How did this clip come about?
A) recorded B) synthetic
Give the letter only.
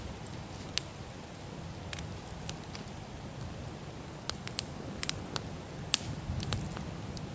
A